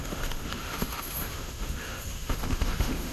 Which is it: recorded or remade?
remade